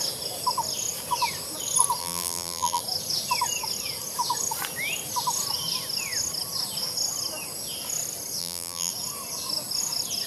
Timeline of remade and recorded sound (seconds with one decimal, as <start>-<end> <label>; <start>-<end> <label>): 0.0-2.0 recorded; 2.0-2.8 remade; 2.8-8.4 recorded; 8.4-8.9 remade; 8.9-10.3 recorded